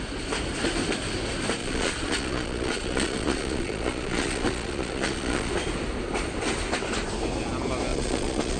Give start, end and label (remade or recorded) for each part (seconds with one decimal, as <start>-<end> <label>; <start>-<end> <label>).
0.0-1.6 recorded; 1.6-5.5 remade; 5.5-7.9 recorded; 7.9-8.6 remade